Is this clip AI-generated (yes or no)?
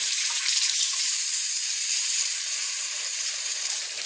yes